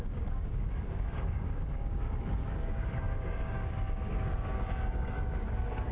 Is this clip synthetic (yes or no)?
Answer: yes